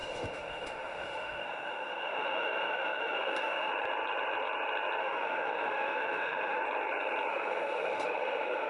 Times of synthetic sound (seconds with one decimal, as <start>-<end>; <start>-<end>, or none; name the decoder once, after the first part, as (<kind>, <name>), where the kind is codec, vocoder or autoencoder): 0.0-3.7 (autoencoder, DAC-VAE); 5.0-6.6; 7.3-8.7